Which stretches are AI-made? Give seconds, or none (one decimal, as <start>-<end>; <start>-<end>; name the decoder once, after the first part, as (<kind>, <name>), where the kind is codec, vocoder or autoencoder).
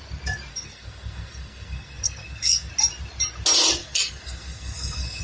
0.5-2.7 (codec, SNAC); 3.8-5.2